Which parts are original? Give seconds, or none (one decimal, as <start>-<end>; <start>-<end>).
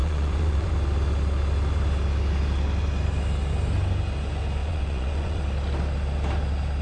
0.7-4.6; 5.4-6.8